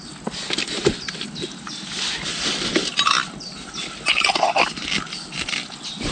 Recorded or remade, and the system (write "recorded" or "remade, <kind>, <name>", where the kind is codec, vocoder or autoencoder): recorded